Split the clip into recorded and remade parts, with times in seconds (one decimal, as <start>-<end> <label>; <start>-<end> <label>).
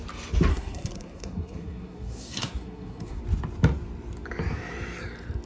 0.0-0.5 recorded; 0.5-3.2 remade; 3.2-5.5 recorded